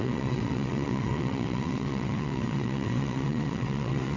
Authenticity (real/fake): fake